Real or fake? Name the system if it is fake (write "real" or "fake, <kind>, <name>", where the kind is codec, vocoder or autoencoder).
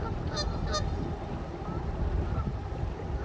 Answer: real